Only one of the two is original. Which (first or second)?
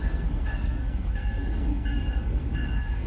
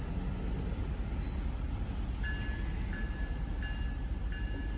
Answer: second